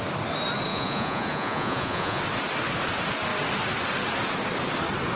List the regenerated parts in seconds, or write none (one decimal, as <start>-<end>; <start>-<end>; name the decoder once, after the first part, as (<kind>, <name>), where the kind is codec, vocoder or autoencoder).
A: 0.7-2.2 (vocoder, Vocos)